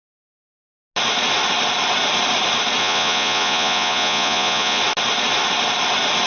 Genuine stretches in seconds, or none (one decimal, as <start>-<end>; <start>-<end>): 0.0-2.8; 4.8-6.3